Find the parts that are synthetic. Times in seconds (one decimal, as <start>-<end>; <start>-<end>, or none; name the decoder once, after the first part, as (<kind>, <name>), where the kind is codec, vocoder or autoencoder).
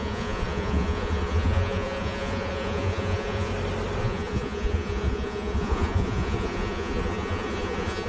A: 0.0-3.5 (vocoder, Vocos); 4.0-8.1